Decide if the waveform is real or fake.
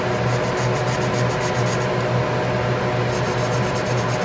real